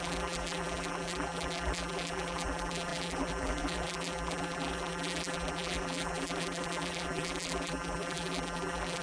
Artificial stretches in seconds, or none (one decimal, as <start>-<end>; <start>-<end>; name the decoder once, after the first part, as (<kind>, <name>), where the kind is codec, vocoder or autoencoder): 0.0-9.0 (vocoder, BigVGAN v2)